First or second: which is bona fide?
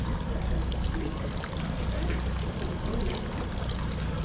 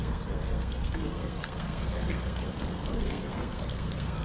first